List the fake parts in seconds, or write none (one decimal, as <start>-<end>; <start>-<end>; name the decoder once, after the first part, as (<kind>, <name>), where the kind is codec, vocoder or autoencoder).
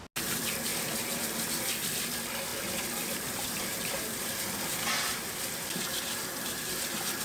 0.7-1.2 (vocoder, BigVGAN v2); 2.5-4.4; 5.1-7.2